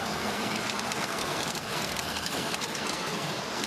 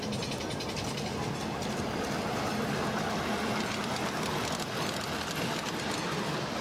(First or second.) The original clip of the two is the second